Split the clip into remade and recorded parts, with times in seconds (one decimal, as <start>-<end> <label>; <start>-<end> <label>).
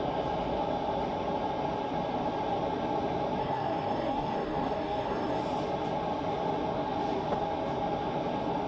0.0-3.4 recorded; 3.4-5.4 remade; 5.4-8.7 recorded